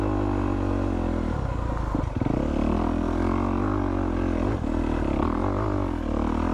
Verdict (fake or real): real